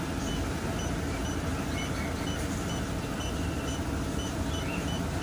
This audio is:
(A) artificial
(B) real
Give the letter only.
B